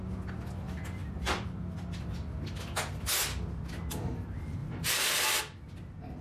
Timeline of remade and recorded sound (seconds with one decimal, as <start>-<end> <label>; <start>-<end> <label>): 0.0-1.0 recorded; 1.0-1.9 remade; 1.9-4.6 recorded; 4.6-5.4 remade; 5.4-6.2 recorded

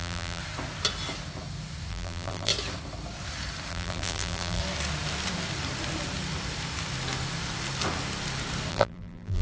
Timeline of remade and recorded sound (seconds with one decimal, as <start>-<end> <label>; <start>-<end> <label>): 0.0-0.4 remade; 0.4-1.9 recorded; 1.9-2.5 remade; 2.5-3.7 recorded; 3.7-4.6 remade; 4.6-8.7 recorded; 8.7-9.4 remade